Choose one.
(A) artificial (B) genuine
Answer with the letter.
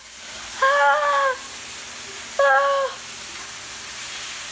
B